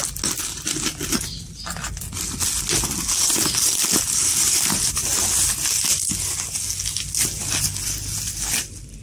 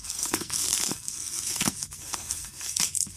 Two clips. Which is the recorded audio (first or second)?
first